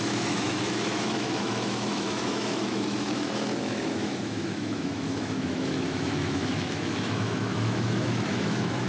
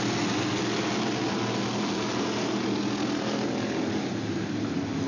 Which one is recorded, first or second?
second